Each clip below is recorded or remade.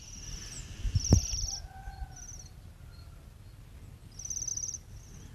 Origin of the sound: recorded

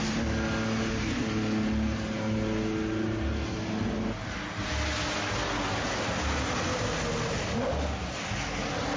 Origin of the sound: recorded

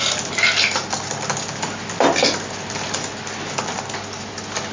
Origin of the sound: recorded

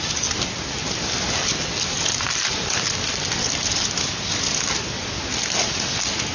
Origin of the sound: recorded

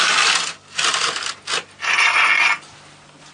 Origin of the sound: recorded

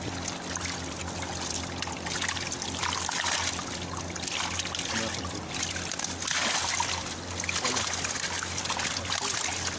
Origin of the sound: recorded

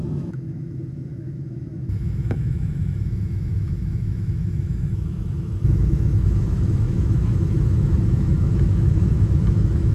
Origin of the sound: remade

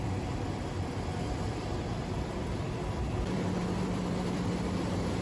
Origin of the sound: remade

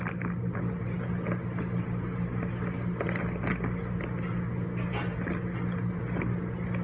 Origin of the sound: recorded